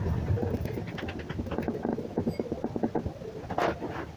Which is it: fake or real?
real